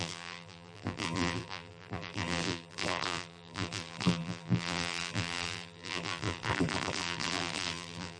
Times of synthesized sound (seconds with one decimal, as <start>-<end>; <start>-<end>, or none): 0.0-8.2